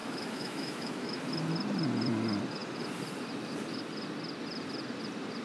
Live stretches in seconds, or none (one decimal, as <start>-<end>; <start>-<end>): 1.2-5.4